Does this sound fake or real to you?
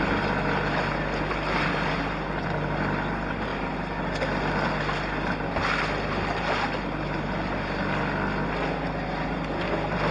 real